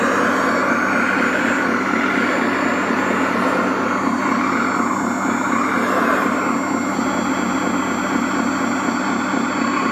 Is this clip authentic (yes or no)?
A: yes